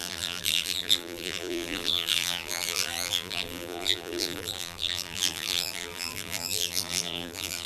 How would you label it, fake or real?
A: fake